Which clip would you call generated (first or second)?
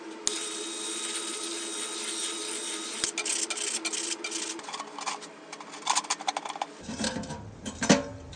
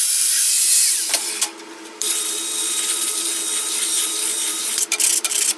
second